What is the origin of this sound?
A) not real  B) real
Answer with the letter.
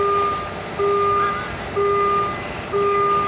B